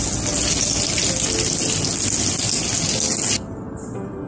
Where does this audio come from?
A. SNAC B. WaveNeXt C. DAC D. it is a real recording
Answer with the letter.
D